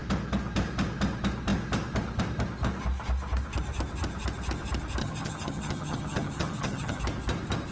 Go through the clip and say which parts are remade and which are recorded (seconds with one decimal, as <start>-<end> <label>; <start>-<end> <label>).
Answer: 0.0-5.0 recorded; 5.0-7.0 remade; 7.0-7.7 recorded